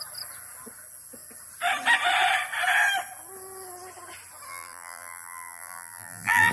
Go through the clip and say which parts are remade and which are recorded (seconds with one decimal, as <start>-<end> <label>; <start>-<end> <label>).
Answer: 0.0-4.5 recorded; 4.5-6.5 remade